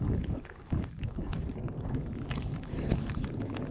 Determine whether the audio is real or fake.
fake